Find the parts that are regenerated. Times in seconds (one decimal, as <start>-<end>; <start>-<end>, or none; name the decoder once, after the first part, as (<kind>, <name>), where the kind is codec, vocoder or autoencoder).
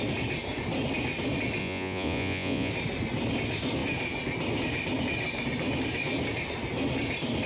1.6-2.7 (vocoder, Vocos)